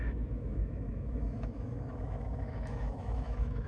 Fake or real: fake